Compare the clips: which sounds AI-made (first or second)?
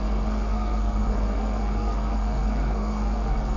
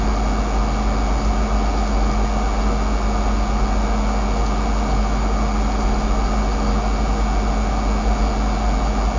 first